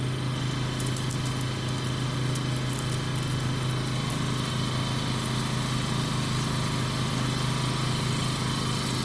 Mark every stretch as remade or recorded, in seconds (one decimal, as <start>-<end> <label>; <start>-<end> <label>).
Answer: 0.0-9.0 recorded